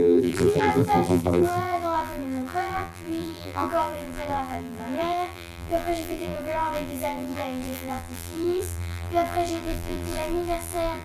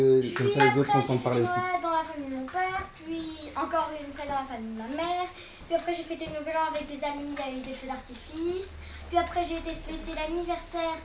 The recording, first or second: second